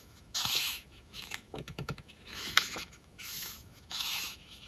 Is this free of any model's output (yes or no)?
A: no